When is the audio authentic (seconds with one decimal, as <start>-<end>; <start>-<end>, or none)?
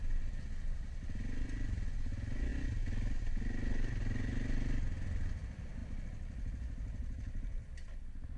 0.0-5.8; 8.0-8.4